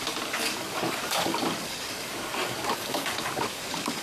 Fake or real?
fake